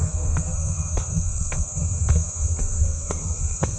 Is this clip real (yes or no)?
no